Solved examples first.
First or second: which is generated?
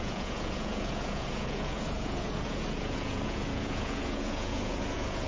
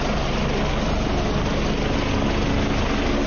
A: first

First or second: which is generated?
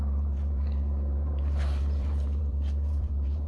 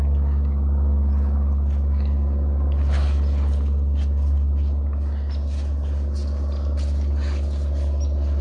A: first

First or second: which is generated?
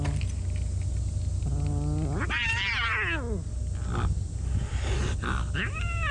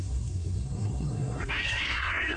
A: second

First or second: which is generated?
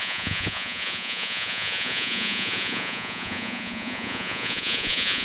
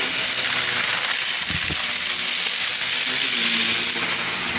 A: first